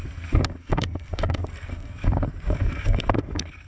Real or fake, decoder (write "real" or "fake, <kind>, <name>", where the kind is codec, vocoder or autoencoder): fake, codec, SNAC